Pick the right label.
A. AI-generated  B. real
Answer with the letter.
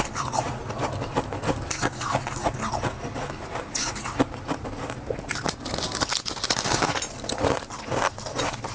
B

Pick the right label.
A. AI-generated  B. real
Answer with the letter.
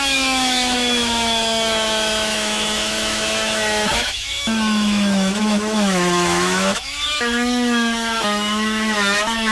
A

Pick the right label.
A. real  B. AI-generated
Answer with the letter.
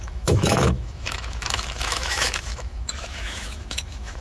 B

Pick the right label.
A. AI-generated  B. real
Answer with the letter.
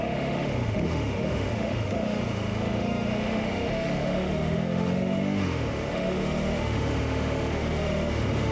A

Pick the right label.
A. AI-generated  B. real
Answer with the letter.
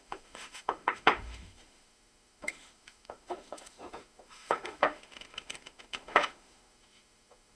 A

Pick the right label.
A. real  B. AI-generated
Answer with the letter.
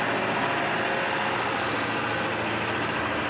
A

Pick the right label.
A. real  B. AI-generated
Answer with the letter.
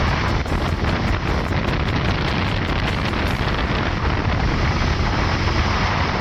A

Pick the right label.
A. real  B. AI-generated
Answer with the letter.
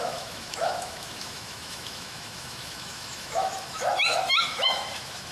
B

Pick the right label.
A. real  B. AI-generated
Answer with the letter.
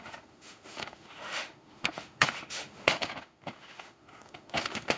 B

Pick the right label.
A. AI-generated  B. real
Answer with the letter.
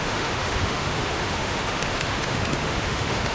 A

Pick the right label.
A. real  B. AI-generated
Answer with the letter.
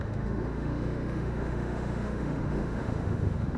B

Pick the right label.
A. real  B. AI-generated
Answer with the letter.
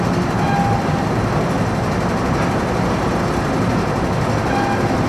A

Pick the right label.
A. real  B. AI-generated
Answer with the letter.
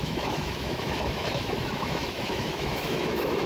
B